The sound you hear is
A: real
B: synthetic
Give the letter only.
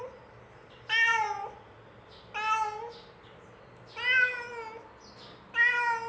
A